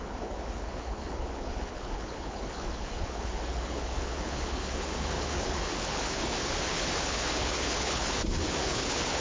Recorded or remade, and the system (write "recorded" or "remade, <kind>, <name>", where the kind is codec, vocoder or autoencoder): remade, codec, HILCodec